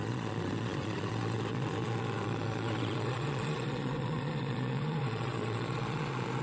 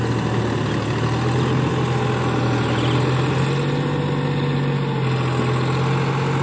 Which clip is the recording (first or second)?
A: second